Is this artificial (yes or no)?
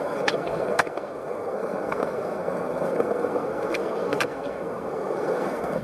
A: yes